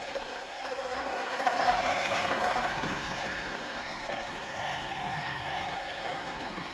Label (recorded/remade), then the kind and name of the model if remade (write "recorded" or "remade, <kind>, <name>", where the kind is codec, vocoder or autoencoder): remade, codec, SNAC